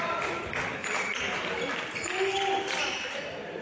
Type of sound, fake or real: real